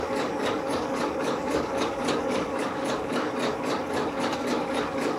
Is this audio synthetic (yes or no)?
yes